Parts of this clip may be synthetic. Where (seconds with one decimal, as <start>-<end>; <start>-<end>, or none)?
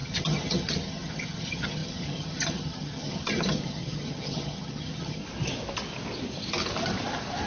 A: 0.0-5.2